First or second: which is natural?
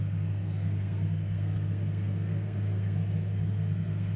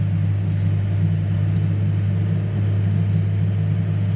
second